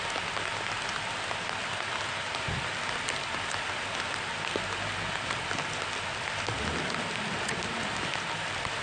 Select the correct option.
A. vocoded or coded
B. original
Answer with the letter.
B